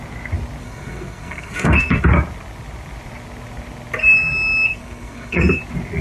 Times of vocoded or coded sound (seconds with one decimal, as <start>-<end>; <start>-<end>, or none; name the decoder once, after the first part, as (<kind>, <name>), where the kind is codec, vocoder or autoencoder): 0.6-2.0 (codec, SNAC); 4.7-5.6